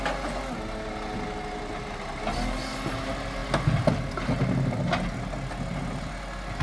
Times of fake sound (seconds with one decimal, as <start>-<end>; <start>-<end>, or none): none